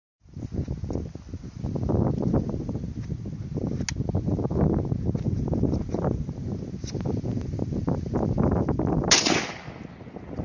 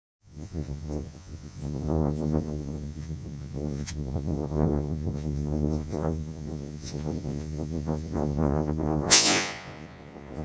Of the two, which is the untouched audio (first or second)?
first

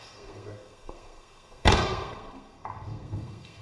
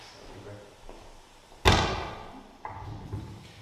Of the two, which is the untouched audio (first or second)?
second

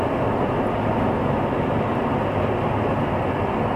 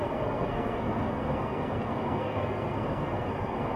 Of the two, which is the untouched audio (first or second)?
first